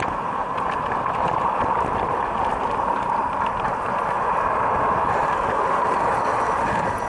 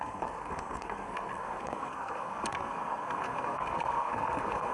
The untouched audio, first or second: first